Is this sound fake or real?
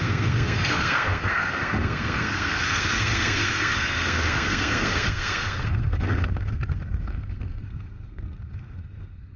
fake